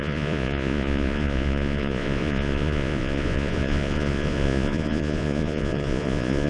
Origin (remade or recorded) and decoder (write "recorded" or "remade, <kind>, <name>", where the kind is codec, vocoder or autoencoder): remade, vocoder, Vocos